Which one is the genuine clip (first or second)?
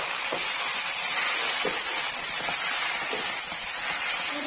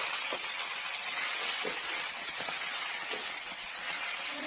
first